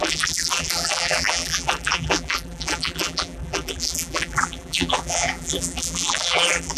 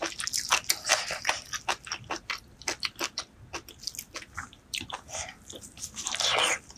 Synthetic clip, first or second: first